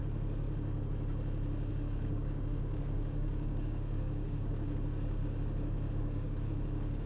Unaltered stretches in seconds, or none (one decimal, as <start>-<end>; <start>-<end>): 0.0-1.7; 5.2-5.9